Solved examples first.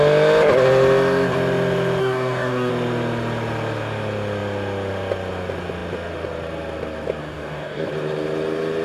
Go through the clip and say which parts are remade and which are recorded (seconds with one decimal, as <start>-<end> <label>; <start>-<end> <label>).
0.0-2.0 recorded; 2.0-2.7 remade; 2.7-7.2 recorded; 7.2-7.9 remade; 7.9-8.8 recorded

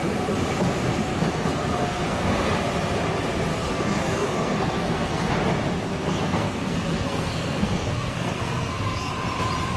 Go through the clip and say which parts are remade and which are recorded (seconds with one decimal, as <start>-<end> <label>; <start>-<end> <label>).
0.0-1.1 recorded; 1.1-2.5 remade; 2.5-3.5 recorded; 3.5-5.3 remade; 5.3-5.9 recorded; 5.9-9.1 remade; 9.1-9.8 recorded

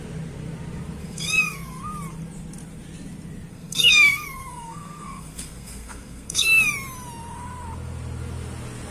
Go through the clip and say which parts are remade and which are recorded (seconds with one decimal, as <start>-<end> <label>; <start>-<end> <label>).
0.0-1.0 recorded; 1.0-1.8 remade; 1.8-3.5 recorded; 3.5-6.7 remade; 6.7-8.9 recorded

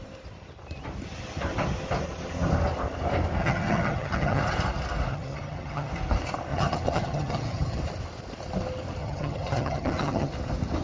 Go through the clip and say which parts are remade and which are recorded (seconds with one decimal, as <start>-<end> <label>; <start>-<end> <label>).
0.0-3.4 recorded; 3.4-4.4 remade; 4.4-5.1 recorded; 5.1-5.9 remade; 5.9-6.5 recorded; 6.5-7.8 remade; 7.8-9.0 recorded; 9.0-10.3 remade; 10.3-10.8 recorded

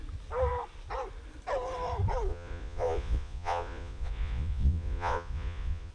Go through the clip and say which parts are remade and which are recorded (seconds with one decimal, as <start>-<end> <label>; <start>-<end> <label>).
0.0-2.3 recorded; 2.3-5.9 remade

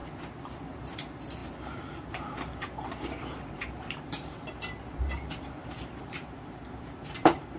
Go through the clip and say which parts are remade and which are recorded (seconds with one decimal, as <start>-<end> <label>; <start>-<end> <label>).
0.0-0.8 recorded; 0.8-7.6 remade